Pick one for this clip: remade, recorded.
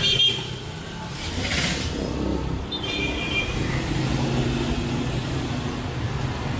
recorded